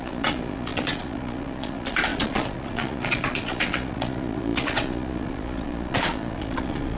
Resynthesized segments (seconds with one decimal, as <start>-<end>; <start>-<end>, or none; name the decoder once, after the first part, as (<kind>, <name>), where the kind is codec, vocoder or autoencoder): 0.0-7.0 (vocoder, Vocos)